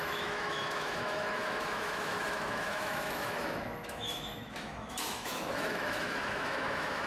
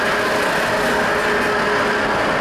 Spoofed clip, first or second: first